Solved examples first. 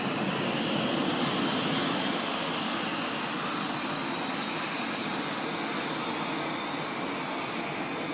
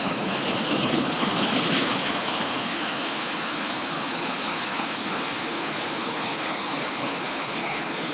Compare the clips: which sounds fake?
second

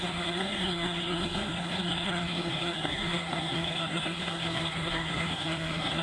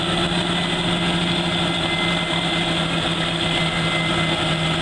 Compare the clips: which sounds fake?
first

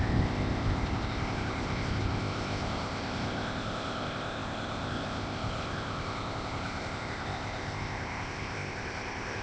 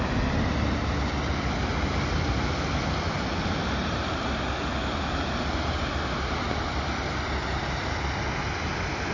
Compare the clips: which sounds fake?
first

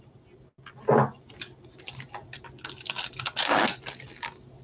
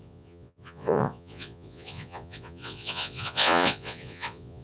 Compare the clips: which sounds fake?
second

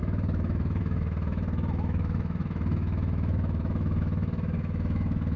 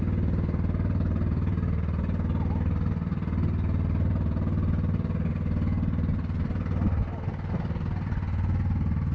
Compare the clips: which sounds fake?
first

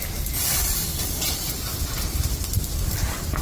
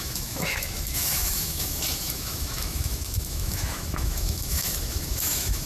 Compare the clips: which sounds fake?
second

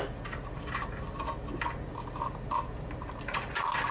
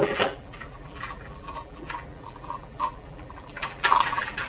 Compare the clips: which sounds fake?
second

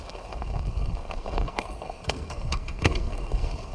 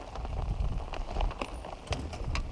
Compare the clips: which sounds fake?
first